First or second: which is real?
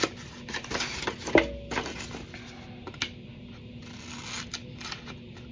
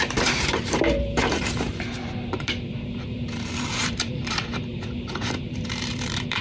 first